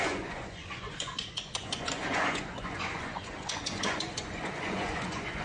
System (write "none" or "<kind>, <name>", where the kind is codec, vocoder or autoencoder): vocoder, Vocos